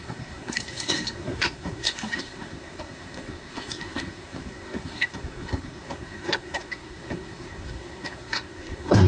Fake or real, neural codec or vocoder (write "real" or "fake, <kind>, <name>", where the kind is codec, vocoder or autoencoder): fake, codec, SNAC